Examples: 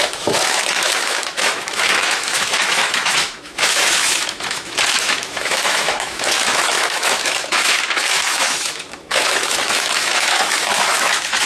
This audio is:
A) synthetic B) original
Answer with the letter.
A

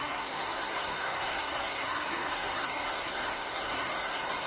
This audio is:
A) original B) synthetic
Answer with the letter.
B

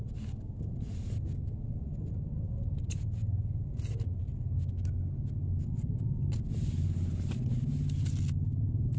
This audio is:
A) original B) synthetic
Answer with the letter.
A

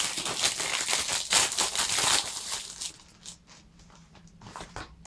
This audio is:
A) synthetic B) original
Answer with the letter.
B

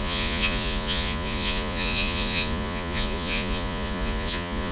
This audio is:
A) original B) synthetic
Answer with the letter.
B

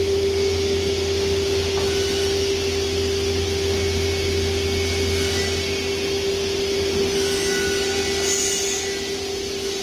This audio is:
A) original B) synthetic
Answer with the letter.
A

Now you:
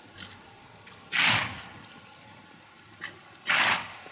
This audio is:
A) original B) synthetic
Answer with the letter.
B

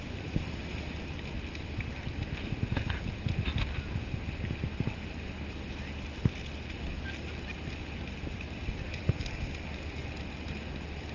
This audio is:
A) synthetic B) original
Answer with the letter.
B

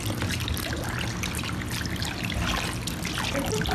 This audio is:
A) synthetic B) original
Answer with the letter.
B